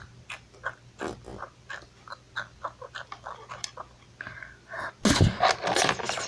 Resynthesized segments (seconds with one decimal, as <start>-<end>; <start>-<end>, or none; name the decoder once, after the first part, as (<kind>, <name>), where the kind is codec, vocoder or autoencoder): none